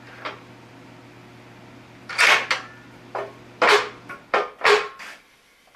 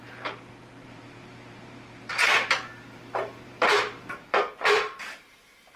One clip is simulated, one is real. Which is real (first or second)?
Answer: first